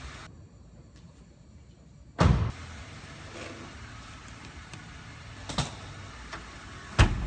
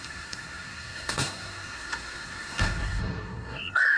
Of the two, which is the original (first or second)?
first